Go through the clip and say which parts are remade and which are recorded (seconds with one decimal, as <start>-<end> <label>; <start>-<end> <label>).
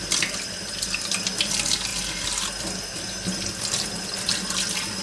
0.0-5.0 recorded